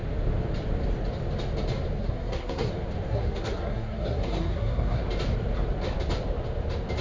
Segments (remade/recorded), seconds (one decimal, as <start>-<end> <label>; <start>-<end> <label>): 0.0-2.0 recorded; 2.0-2.7 remade; 2.7-3.1 recorded; 3.1-5.0 remade; 5.0-7.0 recorded